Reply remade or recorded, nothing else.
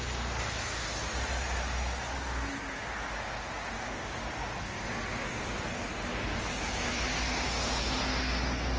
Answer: recorded